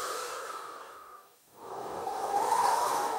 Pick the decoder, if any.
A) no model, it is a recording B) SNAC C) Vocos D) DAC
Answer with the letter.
D